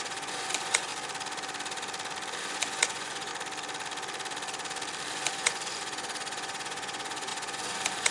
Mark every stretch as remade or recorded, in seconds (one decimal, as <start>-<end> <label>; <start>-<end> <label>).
0.0-0.9 remade; 0.9-2.4 recorded; 2.4-3.3 remade; 3.3-5.1 recorded; 5.1-8.1 remade